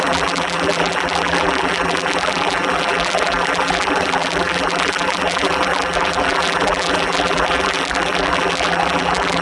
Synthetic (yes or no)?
yes